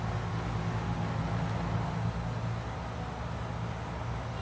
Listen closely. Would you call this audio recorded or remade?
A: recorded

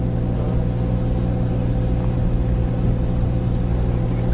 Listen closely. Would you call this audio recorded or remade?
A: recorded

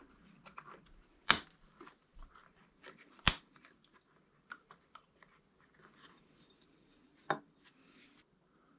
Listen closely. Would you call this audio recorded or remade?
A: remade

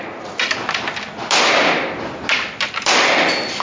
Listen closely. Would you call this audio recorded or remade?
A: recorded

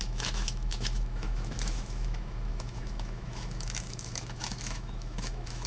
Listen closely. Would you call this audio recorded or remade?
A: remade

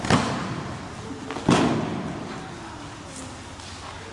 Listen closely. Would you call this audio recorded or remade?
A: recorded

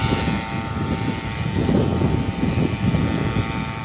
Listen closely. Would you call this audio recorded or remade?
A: recorded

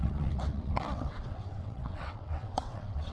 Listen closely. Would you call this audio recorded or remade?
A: remade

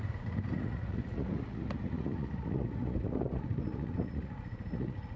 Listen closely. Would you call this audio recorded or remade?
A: remade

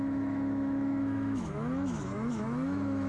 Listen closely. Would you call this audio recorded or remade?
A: remade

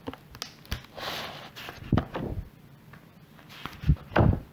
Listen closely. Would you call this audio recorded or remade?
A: recorded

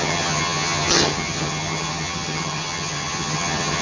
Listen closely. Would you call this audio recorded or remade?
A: remade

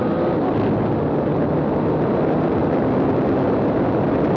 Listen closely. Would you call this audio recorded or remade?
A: recorded